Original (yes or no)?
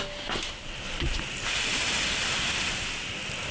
yes